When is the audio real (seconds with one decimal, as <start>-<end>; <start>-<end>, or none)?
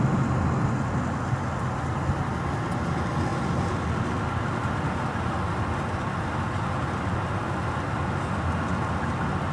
0.0-9.5